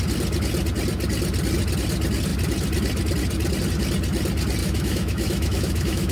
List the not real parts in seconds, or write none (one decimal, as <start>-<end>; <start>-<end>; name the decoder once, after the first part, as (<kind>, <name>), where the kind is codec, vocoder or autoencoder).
4.6-6.1 (autoencoder, DAC-VAE)